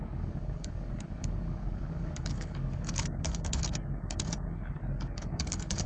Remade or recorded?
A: remade